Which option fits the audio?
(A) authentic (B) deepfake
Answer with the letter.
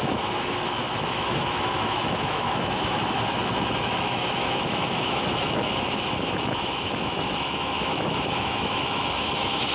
B